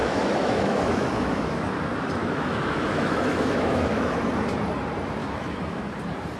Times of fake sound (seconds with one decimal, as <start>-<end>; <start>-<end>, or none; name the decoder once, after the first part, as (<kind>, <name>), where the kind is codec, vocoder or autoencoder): 0.0-1.8 (autoencoder, DAC-VAE); 2.2-4.2; 5.2-5.9